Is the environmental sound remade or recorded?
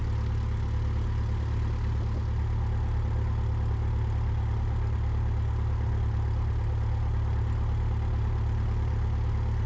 recorded